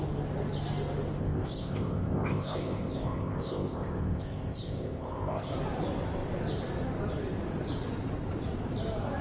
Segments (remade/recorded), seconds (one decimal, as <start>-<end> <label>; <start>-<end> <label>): 0.0-1.2 recorded; 1.2-5.5 remade; 5.5-9.2 recorded